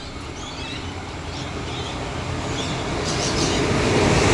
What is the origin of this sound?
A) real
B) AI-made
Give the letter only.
A